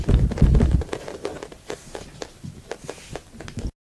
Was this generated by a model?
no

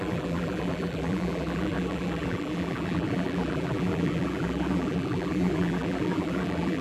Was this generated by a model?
yes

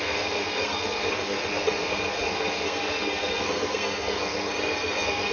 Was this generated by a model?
yes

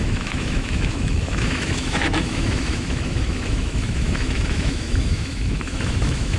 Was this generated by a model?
yes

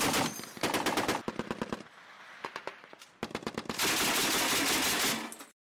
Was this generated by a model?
no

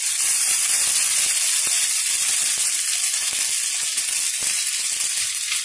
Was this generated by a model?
no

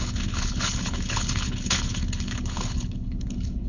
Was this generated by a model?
yes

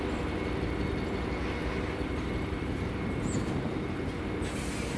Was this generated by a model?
no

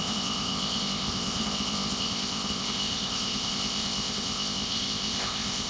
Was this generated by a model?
yes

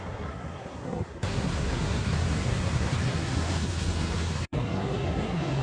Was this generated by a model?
yes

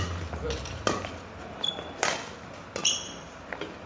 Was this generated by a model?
no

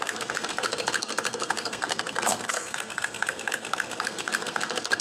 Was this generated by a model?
yes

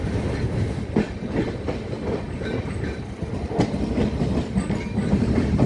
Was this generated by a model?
no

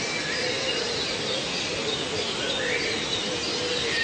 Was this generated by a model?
no